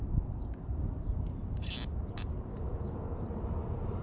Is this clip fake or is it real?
real